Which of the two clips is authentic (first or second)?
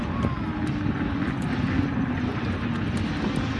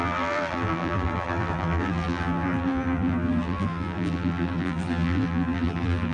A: first